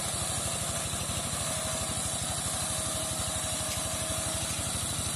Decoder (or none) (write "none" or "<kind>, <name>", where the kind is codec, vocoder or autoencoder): none